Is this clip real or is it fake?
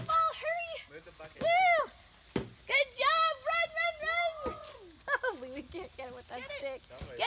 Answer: real